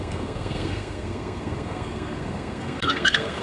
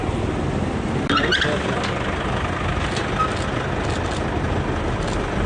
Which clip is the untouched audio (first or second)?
second